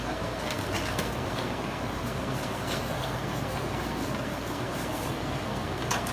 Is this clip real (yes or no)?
no